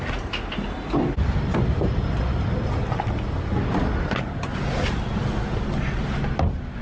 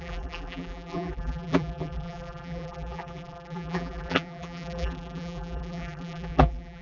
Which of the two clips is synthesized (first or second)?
second